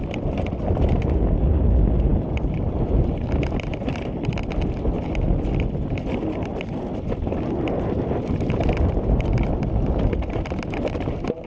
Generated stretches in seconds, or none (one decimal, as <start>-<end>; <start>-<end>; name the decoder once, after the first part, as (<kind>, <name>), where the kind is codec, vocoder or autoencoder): none